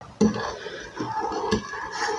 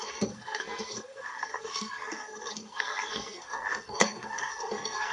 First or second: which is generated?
second